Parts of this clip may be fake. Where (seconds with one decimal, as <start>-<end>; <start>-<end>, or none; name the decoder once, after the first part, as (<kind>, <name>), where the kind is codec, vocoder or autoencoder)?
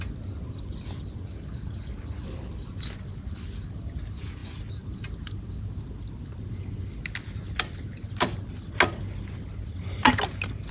none